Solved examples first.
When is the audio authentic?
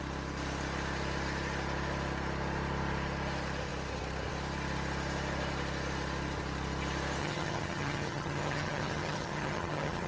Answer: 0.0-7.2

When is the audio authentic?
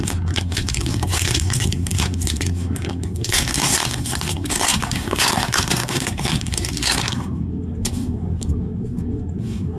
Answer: none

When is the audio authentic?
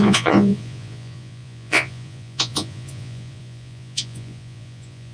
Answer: none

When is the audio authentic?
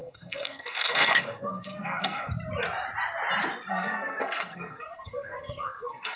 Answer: 2.3-3.7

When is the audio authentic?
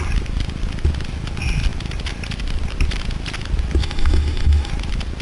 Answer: 0.0-3.8; 4.7-5.2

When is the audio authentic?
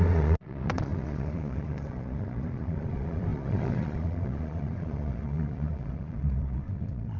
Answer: none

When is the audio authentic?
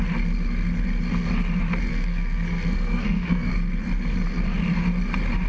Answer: 0.0-1.9; 3.5-5.5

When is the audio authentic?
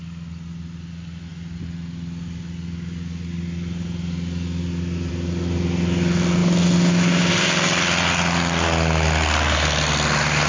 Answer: 0.0-10.5